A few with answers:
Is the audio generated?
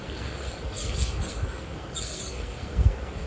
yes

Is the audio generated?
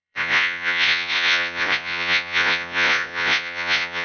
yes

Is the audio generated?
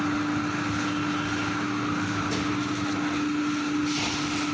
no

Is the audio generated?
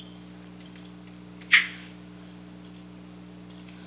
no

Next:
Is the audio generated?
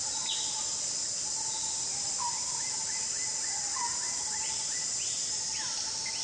no